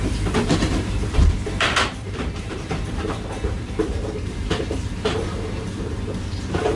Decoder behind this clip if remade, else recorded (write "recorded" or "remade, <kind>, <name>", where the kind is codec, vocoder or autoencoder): remade, vocoder, BigVGAN v2